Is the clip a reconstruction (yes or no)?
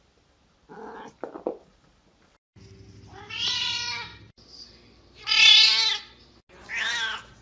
no